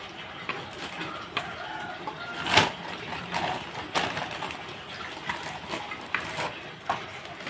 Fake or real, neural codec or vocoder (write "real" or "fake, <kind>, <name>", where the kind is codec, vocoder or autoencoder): real